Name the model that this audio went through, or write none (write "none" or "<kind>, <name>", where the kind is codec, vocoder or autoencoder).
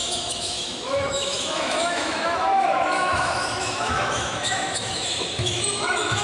autoencoder, DAC-VAE